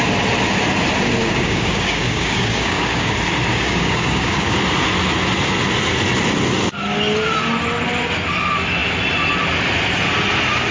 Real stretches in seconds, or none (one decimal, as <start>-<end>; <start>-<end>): 0.0-1.2; 3.1-3.5; 4.6-10.7

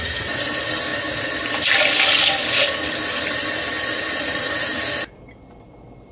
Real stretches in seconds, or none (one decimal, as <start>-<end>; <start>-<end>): 0.9-4.2

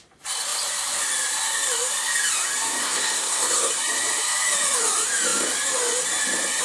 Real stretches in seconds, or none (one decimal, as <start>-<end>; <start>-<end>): 0.0-2.8; 3.7-6.6